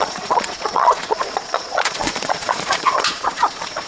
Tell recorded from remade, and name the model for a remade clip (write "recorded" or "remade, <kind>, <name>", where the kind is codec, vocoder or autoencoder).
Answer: remade, vocoder, Vocos